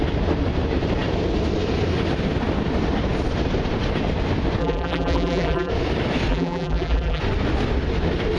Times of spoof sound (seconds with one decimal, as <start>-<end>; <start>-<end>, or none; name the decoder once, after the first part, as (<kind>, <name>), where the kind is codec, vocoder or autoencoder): 4.6-5.7 (vocoder, BigVGAN v2); 6.3-7.2

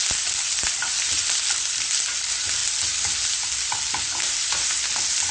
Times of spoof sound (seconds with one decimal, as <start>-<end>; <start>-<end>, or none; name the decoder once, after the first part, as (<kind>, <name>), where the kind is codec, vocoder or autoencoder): none

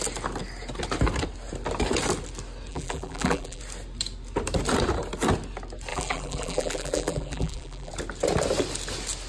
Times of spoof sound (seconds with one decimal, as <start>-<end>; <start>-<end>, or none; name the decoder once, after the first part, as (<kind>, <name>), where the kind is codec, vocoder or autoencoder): 2.7-3.6 (vocoder, BigVGAN v2); 5.9-7.9

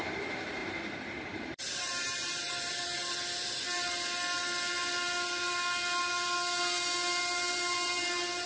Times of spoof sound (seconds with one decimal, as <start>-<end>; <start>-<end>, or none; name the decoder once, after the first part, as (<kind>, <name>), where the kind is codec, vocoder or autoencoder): 0.0-3.0 (vocoder, BigVGAN v2); 7.2-8.5